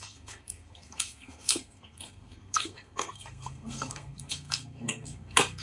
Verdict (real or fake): fake